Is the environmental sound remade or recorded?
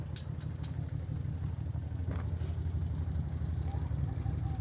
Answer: recorded